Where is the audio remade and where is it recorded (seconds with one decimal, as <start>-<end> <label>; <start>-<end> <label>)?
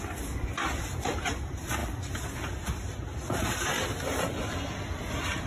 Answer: 0.0-5.5 recorded